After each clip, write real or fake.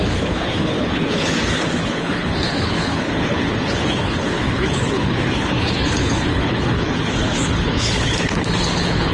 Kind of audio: fake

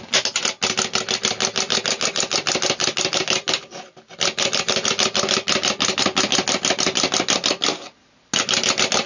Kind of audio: real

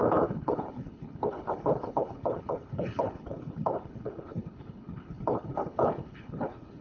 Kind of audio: fake